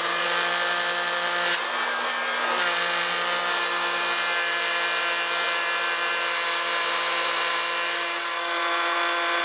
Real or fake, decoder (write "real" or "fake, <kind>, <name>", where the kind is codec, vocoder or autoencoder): real